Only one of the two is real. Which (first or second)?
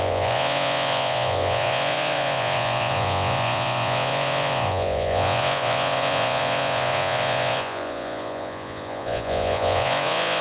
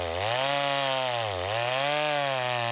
second